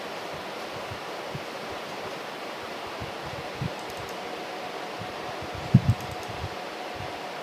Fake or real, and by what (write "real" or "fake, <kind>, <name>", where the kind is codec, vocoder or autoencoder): fake, vocoder, BigVGAN v2